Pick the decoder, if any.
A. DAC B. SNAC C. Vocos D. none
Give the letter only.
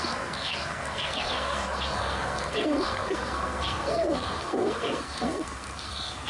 B